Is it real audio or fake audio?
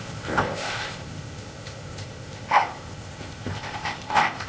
fake